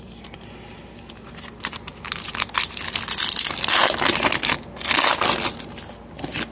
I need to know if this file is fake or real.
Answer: real